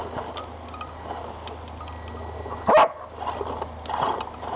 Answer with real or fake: real